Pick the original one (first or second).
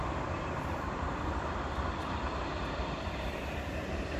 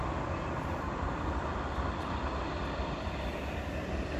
second